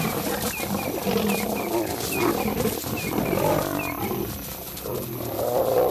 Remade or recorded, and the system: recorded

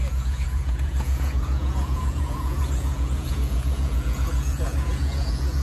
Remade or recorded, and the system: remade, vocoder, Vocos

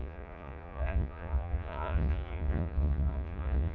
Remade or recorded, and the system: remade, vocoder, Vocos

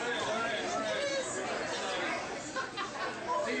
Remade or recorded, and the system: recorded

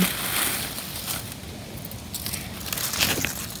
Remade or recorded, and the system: recorded